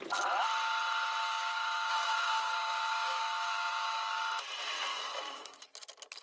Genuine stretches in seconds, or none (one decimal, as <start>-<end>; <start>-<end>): 0.0-1.2; 4.2-4.9; 5.6-6.2